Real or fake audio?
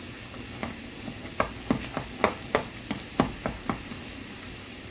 real